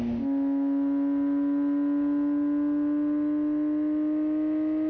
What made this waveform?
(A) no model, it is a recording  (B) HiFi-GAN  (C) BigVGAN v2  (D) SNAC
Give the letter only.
A